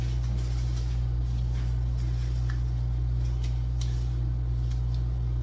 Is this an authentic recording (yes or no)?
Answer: yes